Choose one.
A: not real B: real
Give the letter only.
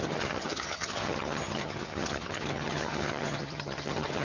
A